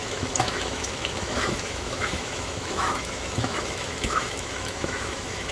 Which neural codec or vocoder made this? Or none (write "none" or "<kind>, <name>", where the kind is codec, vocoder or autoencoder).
autoencoder, DAC-VAE